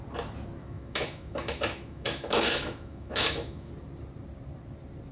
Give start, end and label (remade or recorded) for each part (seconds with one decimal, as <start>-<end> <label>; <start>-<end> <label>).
0.0-0.6 recorded; 0.6-3.7 remade; 3.7-5.1 recorded